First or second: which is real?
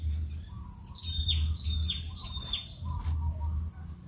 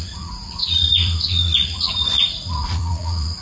first